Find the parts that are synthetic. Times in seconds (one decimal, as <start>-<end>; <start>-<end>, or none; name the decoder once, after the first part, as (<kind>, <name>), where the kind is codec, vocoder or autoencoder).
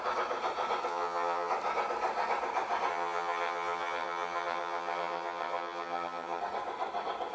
0.9-1.5 (vocoder, HiFi-GAN); 2.9-6.4